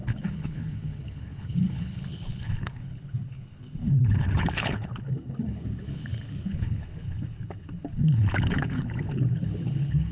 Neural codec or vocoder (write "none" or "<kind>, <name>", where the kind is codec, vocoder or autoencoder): codec, HILCodec